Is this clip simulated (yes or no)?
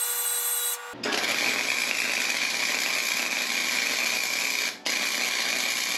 no